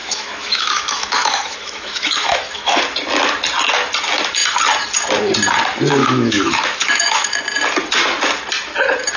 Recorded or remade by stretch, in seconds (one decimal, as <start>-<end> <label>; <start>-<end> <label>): 0.0-2.8 remade; 2.8-6.0 recorded; 6.0-7.4 remade; 7.4-9.2 recorded